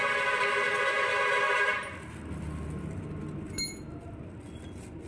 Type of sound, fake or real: real